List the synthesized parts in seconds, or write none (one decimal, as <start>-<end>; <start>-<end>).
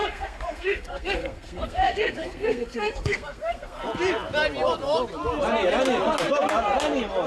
0.0-3.8